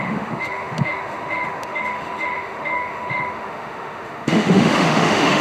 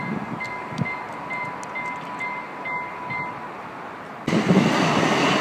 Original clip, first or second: second